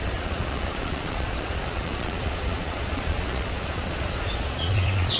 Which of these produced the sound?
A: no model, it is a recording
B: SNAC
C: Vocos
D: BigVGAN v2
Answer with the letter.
C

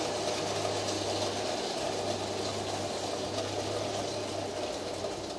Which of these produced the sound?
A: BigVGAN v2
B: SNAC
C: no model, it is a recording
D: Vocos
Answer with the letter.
C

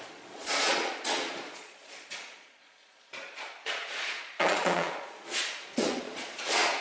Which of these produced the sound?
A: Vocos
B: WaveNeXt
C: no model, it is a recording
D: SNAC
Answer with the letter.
A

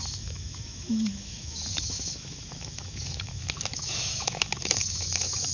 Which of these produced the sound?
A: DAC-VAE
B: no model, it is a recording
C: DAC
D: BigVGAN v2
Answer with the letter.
A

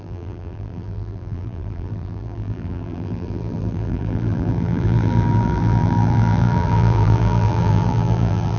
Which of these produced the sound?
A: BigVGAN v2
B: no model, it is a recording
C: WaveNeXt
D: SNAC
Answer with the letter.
A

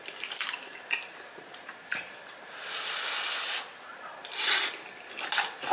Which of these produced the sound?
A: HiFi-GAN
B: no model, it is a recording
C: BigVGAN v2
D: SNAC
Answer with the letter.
B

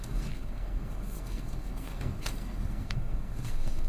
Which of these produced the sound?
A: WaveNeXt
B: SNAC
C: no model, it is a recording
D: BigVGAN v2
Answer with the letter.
B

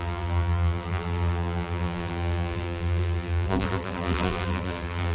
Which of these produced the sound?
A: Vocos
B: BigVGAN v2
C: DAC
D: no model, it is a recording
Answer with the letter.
B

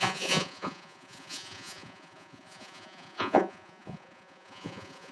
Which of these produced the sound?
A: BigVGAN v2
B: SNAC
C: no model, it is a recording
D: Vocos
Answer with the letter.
D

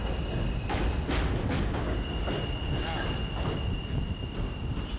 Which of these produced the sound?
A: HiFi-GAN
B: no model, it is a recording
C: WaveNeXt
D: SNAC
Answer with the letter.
B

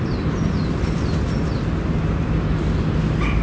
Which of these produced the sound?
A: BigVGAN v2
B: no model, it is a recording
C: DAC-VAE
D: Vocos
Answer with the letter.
B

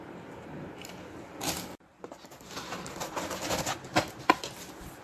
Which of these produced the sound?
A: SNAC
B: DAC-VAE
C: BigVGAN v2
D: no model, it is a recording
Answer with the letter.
D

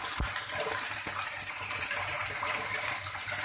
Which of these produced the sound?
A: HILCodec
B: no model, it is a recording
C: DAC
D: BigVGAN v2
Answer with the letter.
D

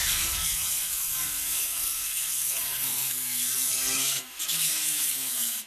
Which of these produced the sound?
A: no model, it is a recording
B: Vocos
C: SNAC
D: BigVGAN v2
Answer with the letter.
C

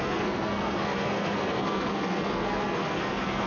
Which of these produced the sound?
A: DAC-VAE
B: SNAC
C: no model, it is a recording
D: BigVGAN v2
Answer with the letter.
B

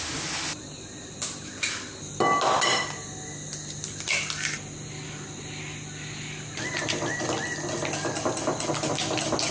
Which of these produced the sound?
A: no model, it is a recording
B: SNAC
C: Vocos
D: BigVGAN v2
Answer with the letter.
A